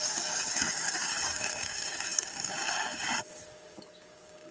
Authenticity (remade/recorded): remade